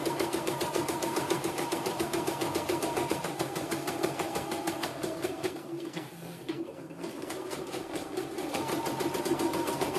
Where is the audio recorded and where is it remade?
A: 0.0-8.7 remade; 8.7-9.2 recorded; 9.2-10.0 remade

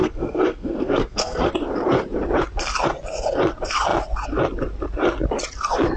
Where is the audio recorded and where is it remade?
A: 0.0-1.5 remade; 1.5-6.0 recorded

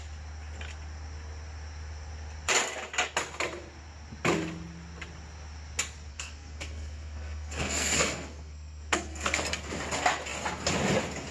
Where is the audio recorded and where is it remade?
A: 0.0-6.1 recorded; 6.1-9.4 remade; 9.4-11.3 recorded

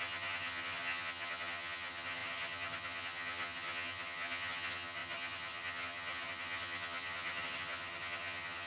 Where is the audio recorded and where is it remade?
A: 0.0-8.7 remade

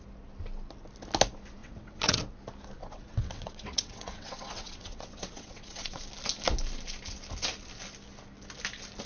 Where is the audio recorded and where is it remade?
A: 0.0-1.6 recorded; 1.6-2.2 remade; 2.2-2.8 recorded; 2.8-6.0 remade; 6.0-9.1 recorded